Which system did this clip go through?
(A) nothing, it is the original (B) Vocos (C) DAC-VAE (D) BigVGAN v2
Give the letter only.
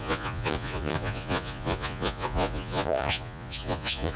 B